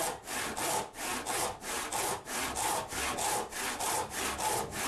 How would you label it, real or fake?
real